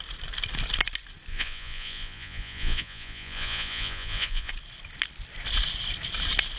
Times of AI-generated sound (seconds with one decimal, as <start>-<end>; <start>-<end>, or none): 1.3-4.5